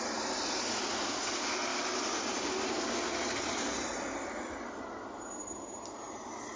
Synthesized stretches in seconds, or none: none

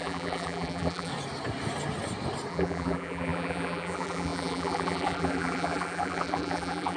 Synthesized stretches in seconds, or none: 0.0-1.1 (vocoder, BigVGAN v2); 2.5-7.0

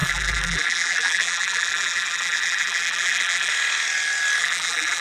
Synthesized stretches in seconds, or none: 0.0-3.5 (vocoder, BigVGAN v2); 4.4-5.0